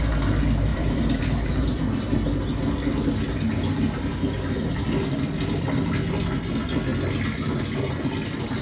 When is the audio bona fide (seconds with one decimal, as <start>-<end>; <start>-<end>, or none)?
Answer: 0.0-0.7; 1.8-4.1; 4.7-8.6